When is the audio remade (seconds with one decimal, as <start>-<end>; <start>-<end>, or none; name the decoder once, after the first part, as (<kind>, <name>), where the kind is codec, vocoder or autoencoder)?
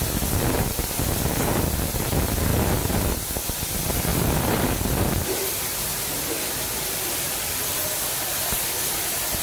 0.0-2.5 (vocoder, BigVGAN v2); 3.0-9.4